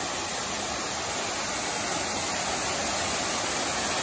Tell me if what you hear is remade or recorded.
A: recorded